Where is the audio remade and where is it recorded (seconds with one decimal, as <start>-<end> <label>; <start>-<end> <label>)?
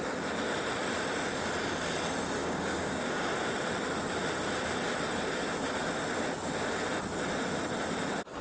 0.0-2.4 recorded; 2.4-3.3 remade; 3.3-8.4 recorded